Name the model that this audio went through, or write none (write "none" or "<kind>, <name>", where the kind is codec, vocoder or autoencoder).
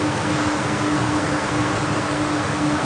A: codec, SNAC